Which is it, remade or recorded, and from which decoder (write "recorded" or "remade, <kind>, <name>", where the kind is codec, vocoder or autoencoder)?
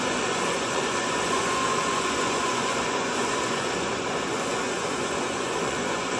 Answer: remade, vocoder, Vocos